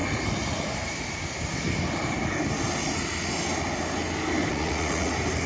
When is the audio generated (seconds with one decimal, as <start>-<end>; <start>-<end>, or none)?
4.5-5.1